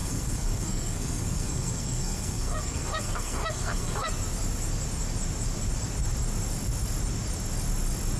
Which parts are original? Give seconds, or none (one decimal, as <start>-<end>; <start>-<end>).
4.1-8.2